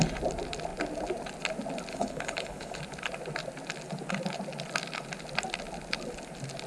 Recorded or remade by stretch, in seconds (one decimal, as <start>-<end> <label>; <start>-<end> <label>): 0.0-1.9 recorded; 1.9-2.8 remade; 2.8-6.7 recorded